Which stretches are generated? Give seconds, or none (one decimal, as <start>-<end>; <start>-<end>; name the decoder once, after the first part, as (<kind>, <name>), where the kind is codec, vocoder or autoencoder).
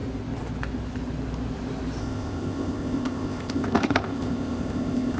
2.0-5.2 (codec, ZipCodec)